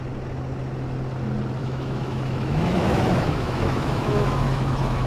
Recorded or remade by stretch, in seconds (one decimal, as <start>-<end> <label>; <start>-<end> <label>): 0.0-1.6 recorded; 1.6-5.1 remade